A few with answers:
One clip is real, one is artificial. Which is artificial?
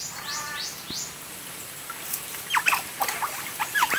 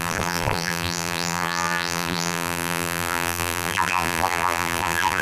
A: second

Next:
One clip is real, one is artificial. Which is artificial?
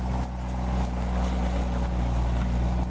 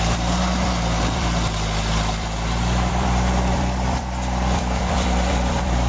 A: second